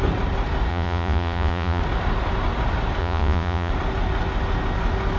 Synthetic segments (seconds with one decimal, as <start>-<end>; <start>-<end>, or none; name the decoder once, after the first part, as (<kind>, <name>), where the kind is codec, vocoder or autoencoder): 0.7-1.8 (vocoder, Vocos); 3.0-3.7